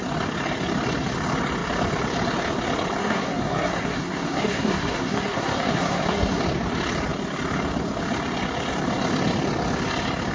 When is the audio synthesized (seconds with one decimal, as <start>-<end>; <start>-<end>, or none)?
3.0-6.4